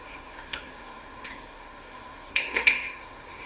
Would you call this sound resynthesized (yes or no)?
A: yes